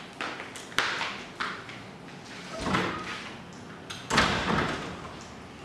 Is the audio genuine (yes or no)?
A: yes